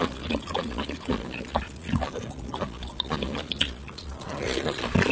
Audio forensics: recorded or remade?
remade